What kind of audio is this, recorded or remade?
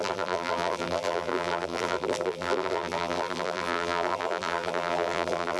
remade